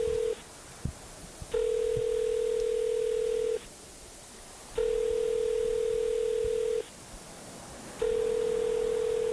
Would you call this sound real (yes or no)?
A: yes